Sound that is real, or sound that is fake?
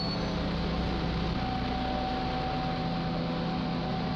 real